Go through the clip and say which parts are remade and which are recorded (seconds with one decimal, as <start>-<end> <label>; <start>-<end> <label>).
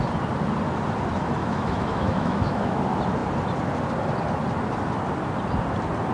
0.0-1.4 recorded; 1.4-2.8 remade; 2.8-6.1 recorded